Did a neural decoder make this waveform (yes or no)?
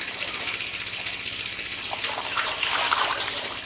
yes